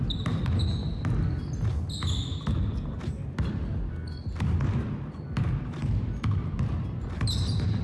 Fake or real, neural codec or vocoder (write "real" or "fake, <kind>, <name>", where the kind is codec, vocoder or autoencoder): real